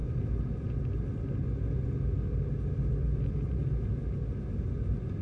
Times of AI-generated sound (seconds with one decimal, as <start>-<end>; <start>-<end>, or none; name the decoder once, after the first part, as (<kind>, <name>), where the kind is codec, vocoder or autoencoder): 2.9-3.6 (vocoder, BigVGAN v2); 4.5-5.2